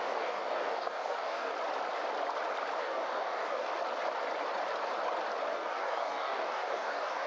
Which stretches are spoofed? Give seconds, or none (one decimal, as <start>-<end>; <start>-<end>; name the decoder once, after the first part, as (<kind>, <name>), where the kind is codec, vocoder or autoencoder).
0.0-1.5 (codec, DAC); 2.8-3.7; 5.5-7.3